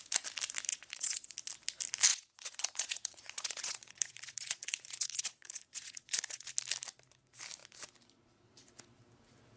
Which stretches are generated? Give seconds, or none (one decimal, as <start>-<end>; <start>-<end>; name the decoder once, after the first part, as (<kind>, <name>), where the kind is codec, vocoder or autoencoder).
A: 0.7-1.3 (vocoder, Vocos); 2.1-6.5